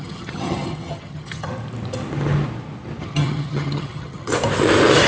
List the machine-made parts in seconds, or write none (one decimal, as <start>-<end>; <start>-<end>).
0.0-1.5; 3.0-4.3